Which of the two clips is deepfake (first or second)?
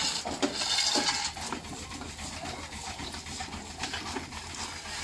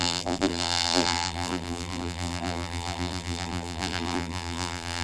second